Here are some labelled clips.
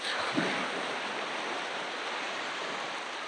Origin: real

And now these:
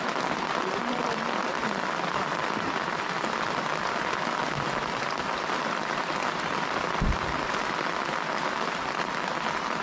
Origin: real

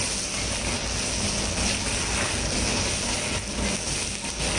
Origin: real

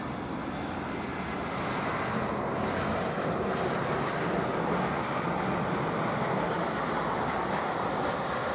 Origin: real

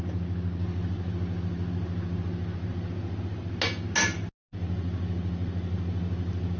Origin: real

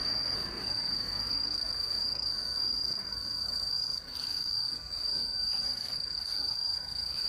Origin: fake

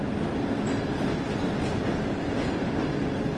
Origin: real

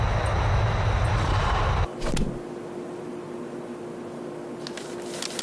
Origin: real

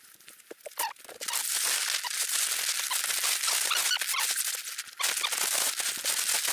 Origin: real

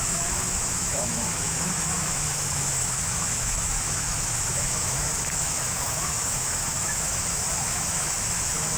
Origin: fake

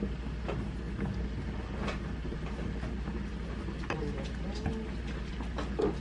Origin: real